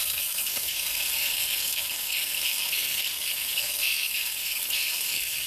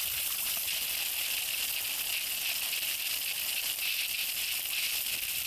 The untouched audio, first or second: second